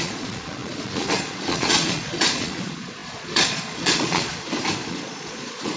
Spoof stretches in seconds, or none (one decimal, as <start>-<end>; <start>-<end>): 0.0-4.3; 4.9-5.8